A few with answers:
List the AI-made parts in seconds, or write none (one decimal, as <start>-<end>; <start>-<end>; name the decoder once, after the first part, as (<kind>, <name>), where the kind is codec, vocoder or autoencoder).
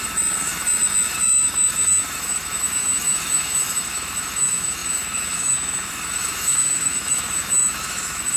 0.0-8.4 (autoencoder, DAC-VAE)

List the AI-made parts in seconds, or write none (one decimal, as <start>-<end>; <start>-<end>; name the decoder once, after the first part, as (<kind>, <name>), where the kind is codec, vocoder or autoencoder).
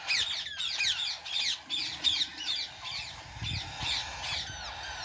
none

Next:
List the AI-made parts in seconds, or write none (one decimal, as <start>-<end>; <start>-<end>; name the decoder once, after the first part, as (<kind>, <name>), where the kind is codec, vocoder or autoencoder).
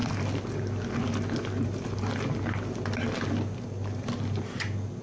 none